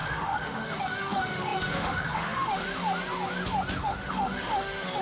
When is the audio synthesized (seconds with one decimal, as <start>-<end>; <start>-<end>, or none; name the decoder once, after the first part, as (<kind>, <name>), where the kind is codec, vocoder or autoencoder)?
0.0-2.6 (autoencoder, DAC-VAE); 3.8-5.0